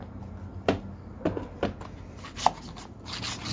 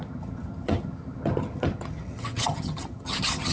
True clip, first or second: first